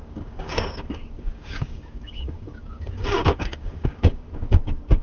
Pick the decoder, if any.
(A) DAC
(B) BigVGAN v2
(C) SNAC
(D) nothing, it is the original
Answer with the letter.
A